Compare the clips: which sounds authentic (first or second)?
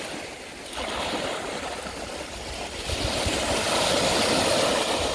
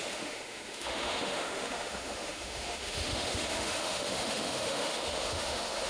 first